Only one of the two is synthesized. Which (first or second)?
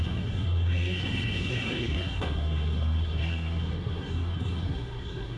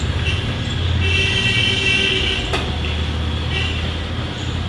first